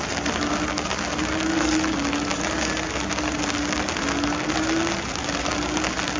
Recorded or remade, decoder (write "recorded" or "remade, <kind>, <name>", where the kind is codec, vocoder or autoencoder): recorded